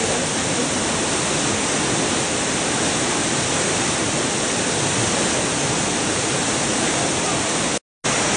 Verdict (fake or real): real